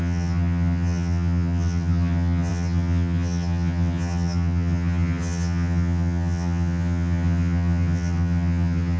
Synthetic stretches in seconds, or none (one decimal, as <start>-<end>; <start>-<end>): 0.0-9.0